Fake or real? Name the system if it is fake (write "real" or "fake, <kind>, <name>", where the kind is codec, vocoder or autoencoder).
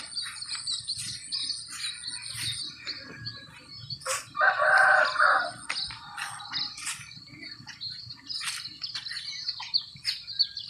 real